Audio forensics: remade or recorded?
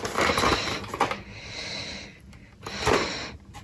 recorded